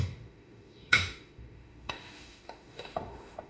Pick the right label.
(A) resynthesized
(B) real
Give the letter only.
A